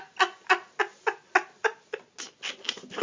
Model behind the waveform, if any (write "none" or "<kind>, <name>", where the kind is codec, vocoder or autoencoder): none